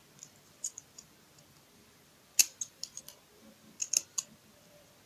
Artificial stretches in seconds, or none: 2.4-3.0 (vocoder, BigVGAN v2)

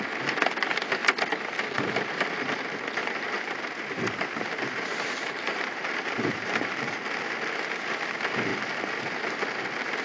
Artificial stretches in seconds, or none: 3.0-6.7 (vocoder, BigVGAN v2)

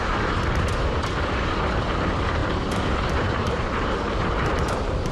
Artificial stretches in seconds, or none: 0.0-5.1 (vocoder, BigVGAN v2)

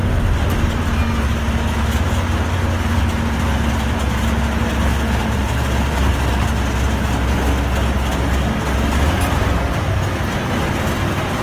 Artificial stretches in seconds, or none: 0.0-1.0 (vocoder, BigVGAN v2); 5.2-6.1

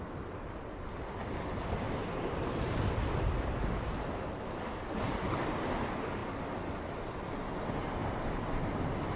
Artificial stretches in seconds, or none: 8.0-8.6 (vocoder, BigVGAN v2)